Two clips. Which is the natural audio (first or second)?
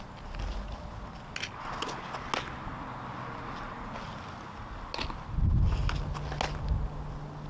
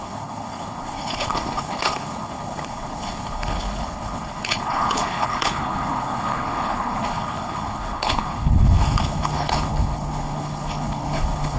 first